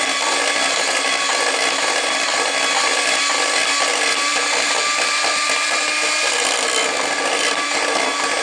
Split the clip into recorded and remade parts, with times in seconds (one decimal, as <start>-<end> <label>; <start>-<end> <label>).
0.0-8.4 recorded